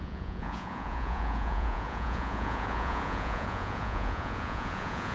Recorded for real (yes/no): no